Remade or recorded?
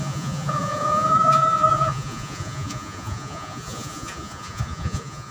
remade